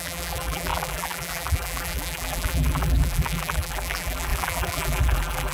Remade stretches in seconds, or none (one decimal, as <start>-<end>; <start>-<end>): 0.0-5.5